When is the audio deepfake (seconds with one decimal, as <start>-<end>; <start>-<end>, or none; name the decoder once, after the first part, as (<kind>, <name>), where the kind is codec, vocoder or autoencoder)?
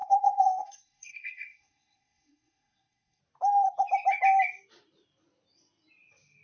0.0-3.2 (codec, SNAC)